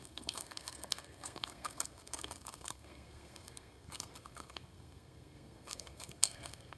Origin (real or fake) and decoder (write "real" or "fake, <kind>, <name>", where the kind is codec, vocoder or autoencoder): fake, codec, SNAC